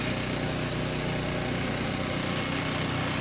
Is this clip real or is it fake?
real